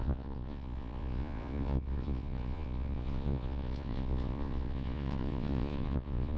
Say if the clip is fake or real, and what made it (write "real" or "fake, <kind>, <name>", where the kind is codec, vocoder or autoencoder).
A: fake, vocoder, Vocos